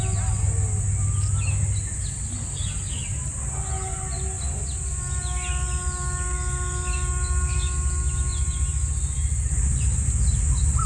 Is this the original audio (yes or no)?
yes